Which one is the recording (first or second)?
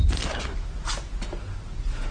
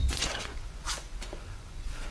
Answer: first